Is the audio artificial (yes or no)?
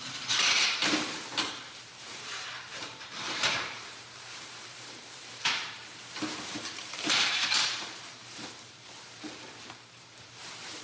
yes